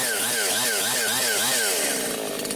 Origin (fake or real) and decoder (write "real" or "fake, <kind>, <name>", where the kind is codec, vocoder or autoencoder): real